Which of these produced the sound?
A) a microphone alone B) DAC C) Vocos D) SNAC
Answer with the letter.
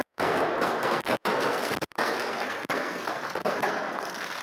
D